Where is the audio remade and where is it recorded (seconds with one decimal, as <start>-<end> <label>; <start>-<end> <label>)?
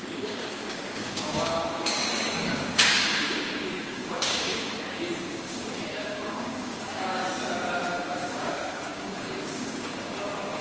0.0-7.2 remade; 7.2-8.1 recorded; 8.1-10.6 remade